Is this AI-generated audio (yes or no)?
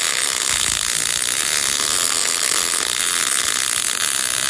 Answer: no